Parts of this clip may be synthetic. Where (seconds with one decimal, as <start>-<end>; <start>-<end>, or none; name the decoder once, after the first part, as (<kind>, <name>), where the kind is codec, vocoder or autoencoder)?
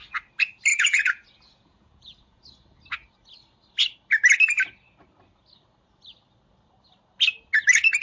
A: 0.7-2.4 (vocoder, Vocos)